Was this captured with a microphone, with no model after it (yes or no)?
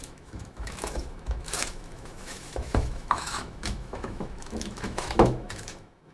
no